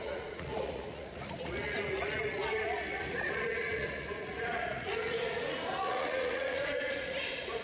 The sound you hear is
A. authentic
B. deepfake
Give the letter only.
B